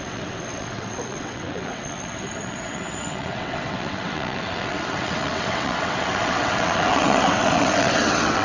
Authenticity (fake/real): fake